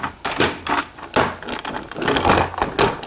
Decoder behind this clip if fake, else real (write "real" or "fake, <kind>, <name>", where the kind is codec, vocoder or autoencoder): real